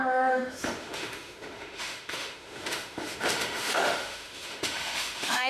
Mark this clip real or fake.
fake